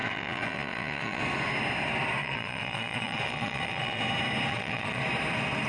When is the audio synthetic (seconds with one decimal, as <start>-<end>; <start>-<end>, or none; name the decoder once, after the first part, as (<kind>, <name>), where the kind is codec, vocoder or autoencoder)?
0.0-1.2 (vocoder, Vocos); 2.2-4.0; 4.5-5.0